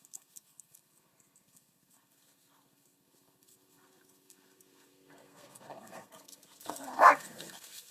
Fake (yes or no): yes